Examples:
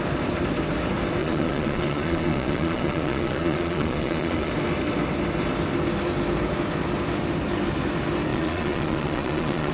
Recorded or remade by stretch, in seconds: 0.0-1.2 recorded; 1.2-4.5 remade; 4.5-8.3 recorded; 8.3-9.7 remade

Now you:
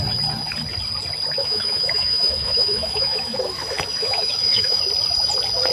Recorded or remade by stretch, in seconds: 0.0-1.4 recorded; 1.4-4.8 remade; 4.8-5.7 recorded

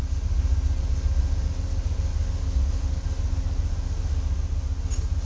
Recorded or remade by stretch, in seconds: 0.0-5.3 recorded

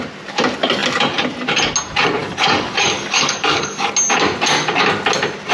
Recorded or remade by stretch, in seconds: 0.0-2.2 recorded; 2.2-3.9 remade; 3.9-5.5 recorded